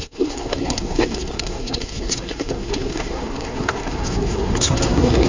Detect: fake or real fake